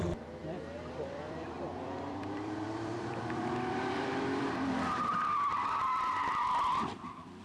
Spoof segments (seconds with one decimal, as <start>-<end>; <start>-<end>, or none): 0.0-5.1; 6.3-7.4